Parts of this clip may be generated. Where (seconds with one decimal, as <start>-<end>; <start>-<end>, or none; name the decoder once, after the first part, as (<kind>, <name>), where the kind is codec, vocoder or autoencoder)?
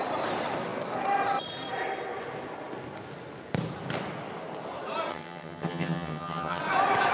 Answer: 5.1-6.6 (vocoder, HiFi-GAN)